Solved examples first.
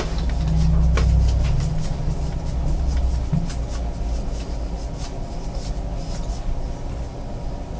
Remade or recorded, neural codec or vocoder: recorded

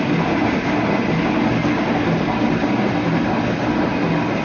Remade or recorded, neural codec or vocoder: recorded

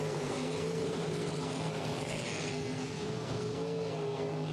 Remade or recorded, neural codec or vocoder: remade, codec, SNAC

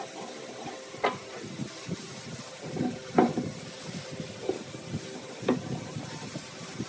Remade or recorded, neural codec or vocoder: recorded